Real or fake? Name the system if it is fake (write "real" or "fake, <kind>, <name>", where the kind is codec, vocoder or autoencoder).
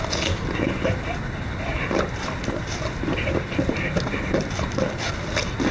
real